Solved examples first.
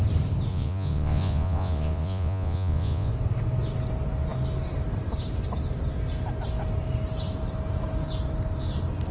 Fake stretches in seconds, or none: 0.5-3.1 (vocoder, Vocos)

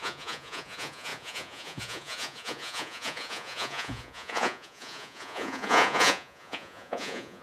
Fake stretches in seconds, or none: 0.0-7.4 (vocoder, Vocos)

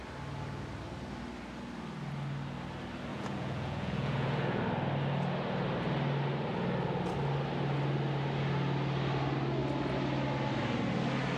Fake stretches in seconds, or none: 3.1-4.6 (vocoder, Vocos)